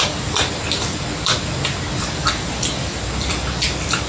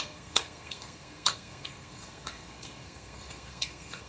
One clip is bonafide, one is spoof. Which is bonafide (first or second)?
first